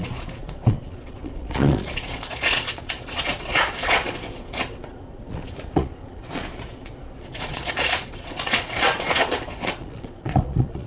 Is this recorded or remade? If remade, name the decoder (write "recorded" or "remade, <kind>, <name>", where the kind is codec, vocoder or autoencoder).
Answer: remade, vocoder, Vocos